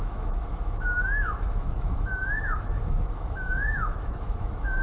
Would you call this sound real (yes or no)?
no